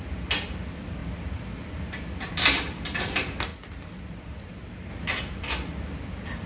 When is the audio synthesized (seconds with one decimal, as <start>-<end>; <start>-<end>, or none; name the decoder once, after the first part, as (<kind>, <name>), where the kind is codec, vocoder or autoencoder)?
none